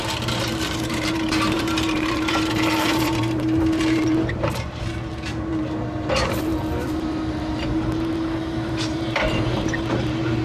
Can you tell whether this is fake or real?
fake